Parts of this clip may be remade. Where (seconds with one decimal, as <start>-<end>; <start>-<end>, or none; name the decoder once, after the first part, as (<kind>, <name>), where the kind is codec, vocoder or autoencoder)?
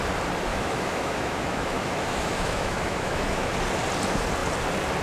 0.5-3.5 (autoencoder, DAC-VAE)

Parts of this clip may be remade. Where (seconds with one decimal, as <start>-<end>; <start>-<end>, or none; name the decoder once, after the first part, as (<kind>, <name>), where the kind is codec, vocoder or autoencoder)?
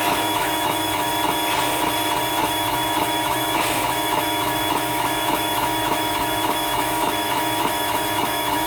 0.0-1.1 (autoencoder, DAC-VAE); 2.3-8.7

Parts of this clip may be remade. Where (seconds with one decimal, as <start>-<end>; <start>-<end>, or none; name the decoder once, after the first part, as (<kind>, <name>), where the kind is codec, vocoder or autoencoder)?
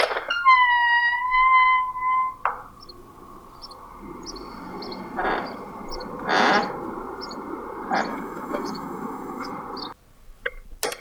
8.1-9.5 (autoencoder, DAC-VAE)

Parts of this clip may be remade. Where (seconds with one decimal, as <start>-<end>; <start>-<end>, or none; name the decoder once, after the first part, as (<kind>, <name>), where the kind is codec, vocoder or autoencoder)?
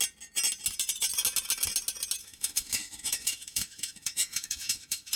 2.2-5.1 (autoencoder, DAC-VAE)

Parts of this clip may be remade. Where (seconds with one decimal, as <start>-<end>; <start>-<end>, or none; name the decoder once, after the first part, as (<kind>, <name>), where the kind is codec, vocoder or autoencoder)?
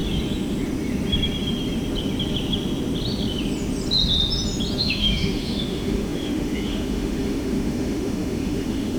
4.8-9.0 (autoencoder, DAC-VAE)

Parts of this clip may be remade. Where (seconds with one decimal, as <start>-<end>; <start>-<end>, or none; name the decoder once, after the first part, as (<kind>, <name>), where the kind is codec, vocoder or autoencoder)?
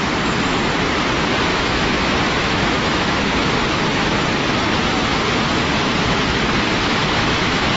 1.5-3.2 (autoencoder, DAC-VAE); 7.0-7.8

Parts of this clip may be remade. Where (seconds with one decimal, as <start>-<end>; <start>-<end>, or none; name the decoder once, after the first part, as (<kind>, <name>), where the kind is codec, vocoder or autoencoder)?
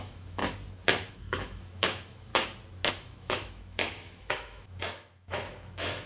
0.0-0.4 (autoencoder, DAC-VAE); 1.1-2.3; 2.9-6.1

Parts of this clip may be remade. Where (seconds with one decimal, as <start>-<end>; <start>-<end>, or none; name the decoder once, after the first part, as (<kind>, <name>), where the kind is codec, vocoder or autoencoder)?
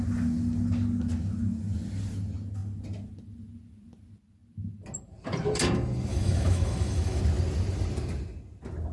6.1-7.2 (autoencoder, DAC-VAE)